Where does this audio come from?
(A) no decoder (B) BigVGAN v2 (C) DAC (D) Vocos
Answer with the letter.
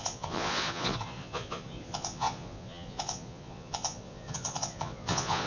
D